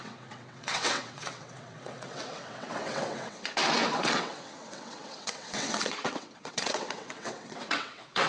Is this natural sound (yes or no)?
no